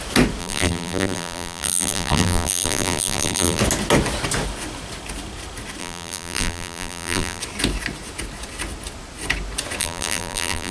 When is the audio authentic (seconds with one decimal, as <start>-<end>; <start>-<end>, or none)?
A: 0.0-0.4; 3.6-5.8; 7.4-9.8